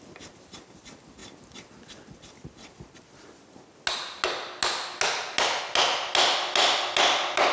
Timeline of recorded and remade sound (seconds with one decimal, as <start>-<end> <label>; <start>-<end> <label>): 0.0-7.5 recorded